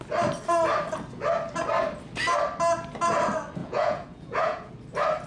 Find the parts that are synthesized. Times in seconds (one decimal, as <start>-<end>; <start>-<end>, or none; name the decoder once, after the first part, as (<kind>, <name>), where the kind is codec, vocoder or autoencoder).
3.6-4.7 (vocoder, Vocos)